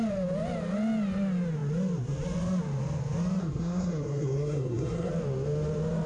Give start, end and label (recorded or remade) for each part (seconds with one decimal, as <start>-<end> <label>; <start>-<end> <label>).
0.0-3.4 recorded; 3.4-5.1 remade; 5.1-6.1 recorded